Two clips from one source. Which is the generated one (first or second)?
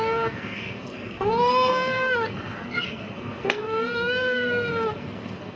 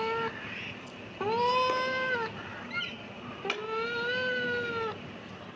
first